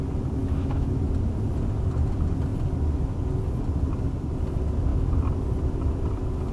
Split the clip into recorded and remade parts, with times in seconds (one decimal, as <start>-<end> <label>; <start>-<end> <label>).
0.0-0.4 recorded; 0.4-0.9 remade; 0.9-6.5 recorded